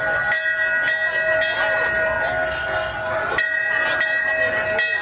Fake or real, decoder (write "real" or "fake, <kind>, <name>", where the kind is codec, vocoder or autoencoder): real